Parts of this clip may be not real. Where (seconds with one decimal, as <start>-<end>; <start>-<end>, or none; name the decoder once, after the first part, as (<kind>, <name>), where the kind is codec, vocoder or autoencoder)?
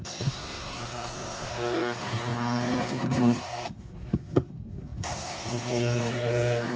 0.0-6.8 (codec, SNAC)